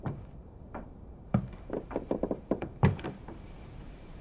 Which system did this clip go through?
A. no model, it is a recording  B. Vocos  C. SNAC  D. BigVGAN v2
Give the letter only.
D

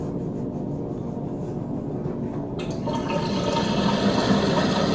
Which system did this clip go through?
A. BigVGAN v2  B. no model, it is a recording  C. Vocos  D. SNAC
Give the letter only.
B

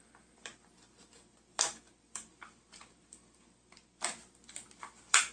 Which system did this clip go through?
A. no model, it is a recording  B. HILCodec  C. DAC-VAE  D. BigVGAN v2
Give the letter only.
D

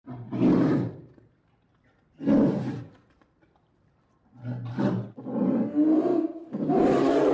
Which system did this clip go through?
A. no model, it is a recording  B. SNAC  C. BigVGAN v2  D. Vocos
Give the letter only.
A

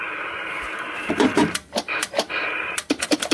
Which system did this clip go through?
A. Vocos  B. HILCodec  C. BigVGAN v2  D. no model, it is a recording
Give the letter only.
C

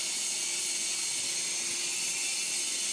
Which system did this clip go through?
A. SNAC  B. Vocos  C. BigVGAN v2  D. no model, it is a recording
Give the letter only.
D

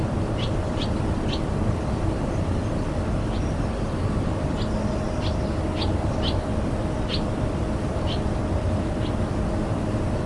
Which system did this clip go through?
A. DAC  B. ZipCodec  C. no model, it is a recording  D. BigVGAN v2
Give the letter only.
C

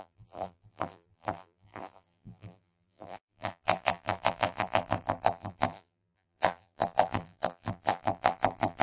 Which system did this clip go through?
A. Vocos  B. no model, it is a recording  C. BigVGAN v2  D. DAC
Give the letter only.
C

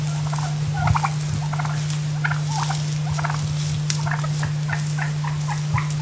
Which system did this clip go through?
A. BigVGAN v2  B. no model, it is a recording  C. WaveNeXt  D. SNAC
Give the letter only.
B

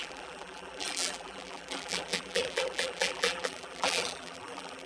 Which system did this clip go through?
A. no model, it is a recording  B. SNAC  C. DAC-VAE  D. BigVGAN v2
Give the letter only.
D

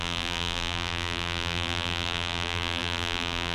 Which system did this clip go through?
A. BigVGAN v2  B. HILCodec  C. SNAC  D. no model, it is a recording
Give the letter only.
A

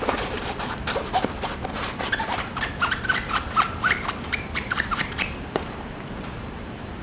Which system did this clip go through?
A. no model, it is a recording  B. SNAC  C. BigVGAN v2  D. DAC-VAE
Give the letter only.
C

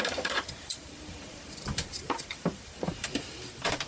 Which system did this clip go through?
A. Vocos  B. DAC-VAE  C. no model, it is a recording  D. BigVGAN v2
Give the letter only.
D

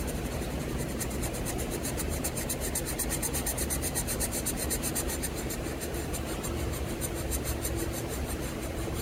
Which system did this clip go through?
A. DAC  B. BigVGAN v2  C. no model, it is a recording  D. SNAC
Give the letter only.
B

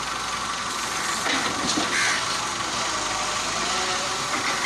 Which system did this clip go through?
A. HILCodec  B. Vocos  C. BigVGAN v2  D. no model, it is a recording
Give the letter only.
D